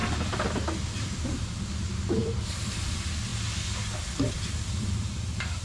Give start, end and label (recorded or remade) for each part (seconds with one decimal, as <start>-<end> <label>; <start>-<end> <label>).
0.0-0.8 recorded; 0.8-3.3 remade; 3.3-4.3 recorded; 4.3-5.6 remade